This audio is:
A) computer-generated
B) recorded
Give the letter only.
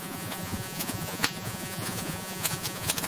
A